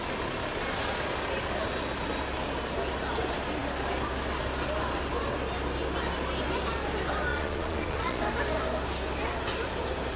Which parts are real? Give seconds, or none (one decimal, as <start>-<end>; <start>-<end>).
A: 0.0-7.3; 8.2-10.2